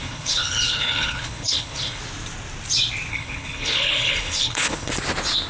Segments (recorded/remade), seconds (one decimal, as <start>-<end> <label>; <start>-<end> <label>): 0.0-2.0 remade; 2.0-3.1 recorded; 3.1-4.9 remade; 4.9-5.5 recorded